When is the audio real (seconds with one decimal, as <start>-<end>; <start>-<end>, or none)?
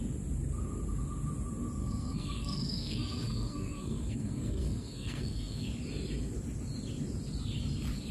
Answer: 0.0-1.8; 5.7-8.1